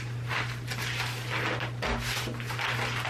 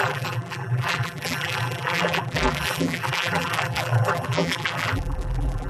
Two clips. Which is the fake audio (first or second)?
second